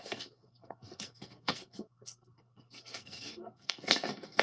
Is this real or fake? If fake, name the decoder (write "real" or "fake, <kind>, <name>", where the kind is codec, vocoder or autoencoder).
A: fake, codec, SNAC